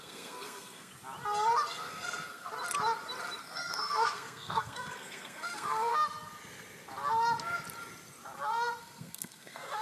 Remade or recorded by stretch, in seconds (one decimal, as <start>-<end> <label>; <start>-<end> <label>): 0.0-0.9 remade; 0.9-1.7 recorded; 1.7-2.5 remade; 2.5-3.4 recorded; 3.4-5.9 remade; 5.9-8.8 recorded; 8.8-9.8 remade

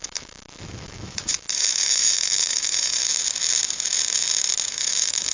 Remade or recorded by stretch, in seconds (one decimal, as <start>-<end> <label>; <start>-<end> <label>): 0.0-3.0 remade; 3.0-4.7 recorded; 4.7-5.3 remade

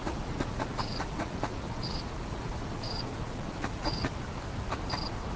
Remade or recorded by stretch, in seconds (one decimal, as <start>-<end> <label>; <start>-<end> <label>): 0.0-4.1 remade; 4.1-5.0 recorded; 5.0-5.4 remade

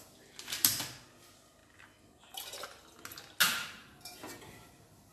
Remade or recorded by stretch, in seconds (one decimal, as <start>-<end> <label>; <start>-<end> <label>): 0.0-5.1 recorded

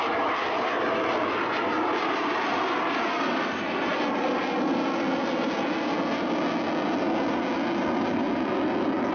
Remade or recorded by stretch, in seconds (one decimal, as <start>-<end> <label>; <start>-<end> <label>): 0.0-9.1 recorded

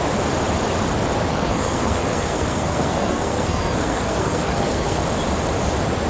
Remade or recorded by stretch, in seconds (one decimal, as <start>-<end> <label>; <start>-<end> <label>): 0.0-1.3 recorded; 1.3-5.0 remade; 5.0-6.1 recorded